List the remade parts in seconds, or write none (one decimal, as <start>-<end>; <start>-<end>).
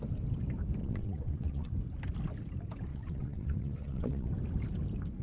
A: 0.8-1.7; 2.9-4.3